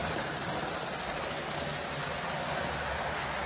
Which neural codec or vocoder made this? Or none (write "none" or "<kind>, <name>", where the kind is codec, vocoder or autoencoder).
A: none